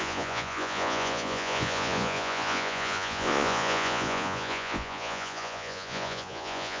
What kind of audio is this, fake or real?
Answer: fake